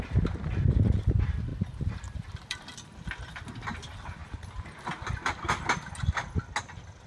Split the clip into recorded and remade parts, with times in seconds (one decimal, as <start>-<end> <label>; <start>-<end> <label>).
0.0-1.5 recorded; 1.5-3.4 remade; 3.4-7.1 recorded